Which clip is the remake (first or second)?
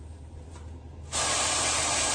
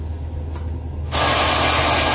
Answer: first